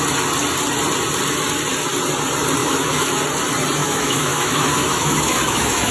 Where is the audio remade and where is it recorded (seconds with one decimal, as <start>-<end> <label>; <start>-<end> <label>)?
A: 0.0-2.6 recorded; 2.6-3.2 remade; 3.2-3.8 recorded; 3.8-5.9 remade